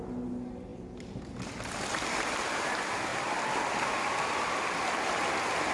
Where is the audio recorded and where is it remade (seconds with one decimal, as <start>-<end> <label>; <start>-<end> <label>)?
0.0-5.7 recorded